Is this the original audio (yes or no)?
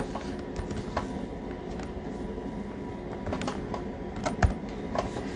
yes